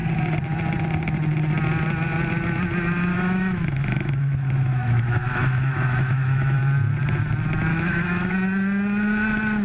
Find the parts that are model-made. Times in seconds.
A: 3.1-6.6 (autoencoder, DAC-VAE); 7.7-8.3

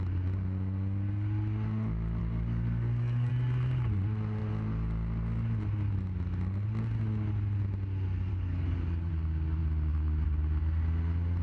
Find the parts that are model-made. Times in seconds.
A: 2.2-3.3 (codec, DAC); 8.3-9.1

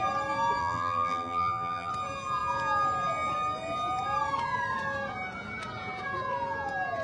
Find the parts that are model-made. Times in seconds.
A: 0.6-1.9 (vocoder, BigVGAN v2)

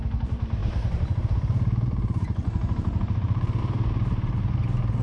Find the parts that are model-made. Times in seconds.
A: 0.0-5.0 (vocoder, BigVGAN v2)

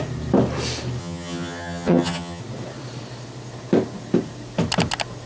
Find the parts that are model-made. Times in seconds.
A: 1.0-2.4 (vocoder, HiFi-GAN)

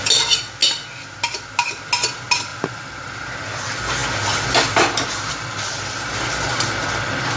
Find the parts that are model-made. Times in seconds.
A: none

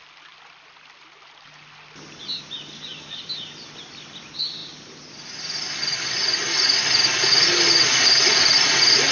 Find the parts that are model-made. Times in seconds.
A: none

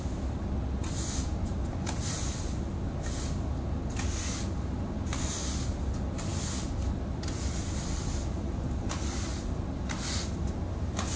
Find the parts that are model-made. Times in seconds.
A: none